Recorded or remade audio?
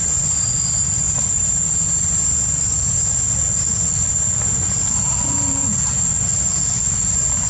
recorded